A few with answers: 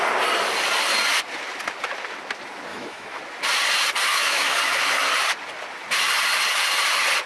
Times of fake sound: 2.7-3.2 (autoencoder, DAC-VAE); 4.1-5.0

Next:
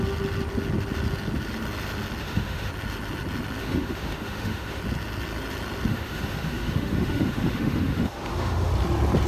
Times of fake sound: 2.2-2.7 (autoencoder, DAC-VAE); 3.6-4.8; 5.9-8.7

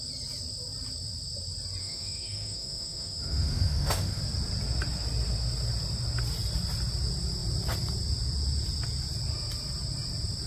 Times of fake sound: 1.8-4.2 (autoencoder, DAC-VAE)

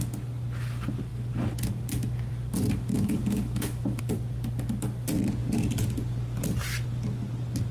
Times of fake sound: 2.9-4.1 (autoencoder, DAC-VAE)